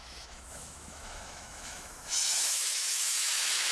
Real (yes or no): no